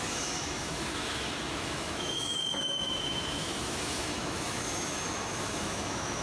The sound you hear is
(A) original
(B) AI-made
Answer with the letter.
B